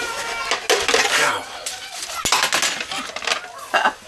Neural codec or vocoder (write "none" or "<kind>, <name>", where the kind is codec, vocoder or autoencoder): none